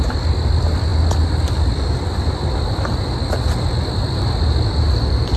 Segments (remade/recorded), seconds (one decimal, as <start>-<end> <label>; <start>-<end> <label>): 0.0-5.4 recorded